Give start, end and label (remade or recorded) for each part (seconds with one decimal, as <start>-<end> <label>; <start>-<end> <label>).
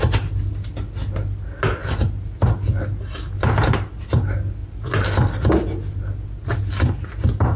0.0-7.6 recorded